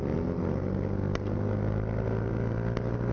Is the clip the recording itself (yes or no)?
yes